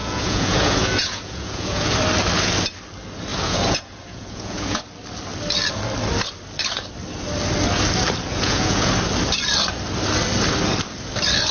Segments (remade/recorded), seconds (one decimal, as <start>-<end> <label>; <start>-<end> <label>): 0.0-1.9 remade; 1.9-3.3 recorded; 3.3-4.8 remade; 4.8-8.3 recorded; 8.3-8.9 remade; 8.9-11.5 recorded